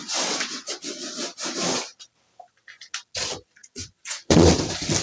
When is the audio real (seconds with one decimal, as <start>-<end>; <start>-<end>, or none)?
0.9-3.6; 4.6-5.0